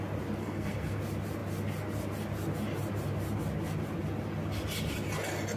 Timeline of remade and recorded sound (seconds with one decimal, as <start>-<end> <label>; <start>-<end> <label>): 0.0-0.4 recorded; 0.4-1.0 remade; 1.0-5.6 recorded